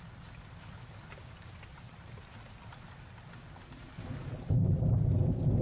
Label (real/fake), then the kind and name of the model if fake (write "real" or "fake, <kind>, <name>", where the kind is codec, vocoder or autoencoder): real